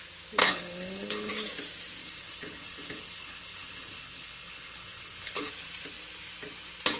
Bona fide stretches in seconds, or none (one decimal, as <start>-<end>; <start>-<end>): 0.0-0.4; 1.3-2.0; 5.5-7.0

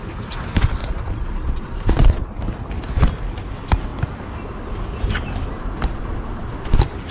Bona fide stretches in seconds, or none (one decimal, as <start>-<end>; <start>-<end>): 0.0-0.8; 2.4-7.1

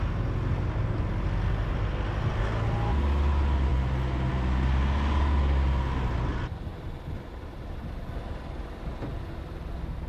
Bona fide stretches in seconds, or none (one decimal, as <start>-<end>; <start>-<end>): 0.0-10.1

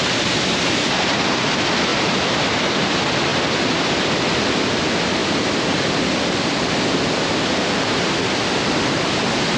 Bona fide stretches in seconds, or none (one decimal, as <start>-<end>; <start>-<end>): 0.0-1.9; 2.6-3.3; 4.6-5.2; 8.8-9.6

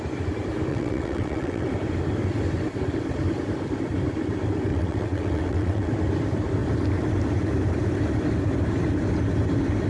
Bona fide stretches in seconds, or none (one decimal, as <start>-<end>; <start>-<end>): 0.0-0.7; 1.7-4.7; 5.9-9.9

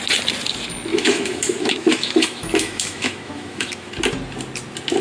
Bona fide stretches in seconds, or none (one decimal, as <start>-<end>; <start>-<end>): 0.0-0.9; 3.9-5.0

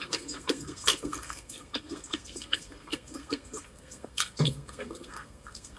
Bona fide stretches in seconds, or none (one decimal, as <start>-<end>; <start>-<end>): none